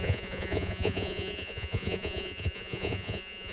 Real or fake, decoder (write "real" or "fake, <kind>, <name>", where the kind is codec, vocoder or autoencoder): fake, vocoder, Vocos